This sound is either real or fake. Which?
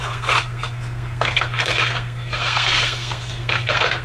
fake